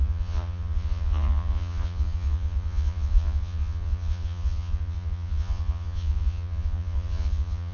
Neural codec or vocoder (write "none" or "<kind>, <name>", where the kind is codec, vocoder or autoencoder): vocoder, Vocos